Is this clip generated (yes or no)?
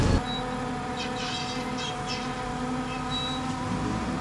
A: no